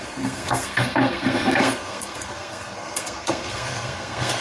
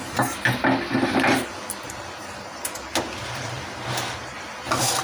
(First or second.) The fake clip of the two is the first